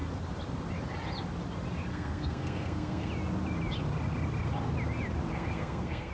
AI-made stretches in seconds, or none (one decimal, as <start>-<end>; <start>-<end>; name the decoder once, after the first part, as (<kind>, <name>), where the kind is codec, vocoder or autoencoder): 1.9-3.1 (codec, SNAC); 5.3-6.1